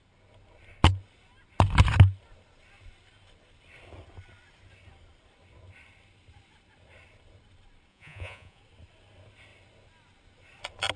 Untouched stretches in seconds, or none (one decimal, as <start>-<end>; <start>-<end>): 0.0-7.9; 8.6-11.0